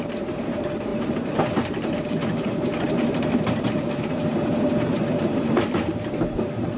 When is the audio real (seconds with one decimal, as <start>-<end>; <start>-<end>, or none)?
none